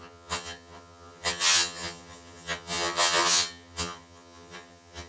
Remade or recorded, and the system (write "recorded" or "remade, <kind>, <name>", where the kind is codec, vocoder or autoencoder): remade, vocoder, HiFi-GAN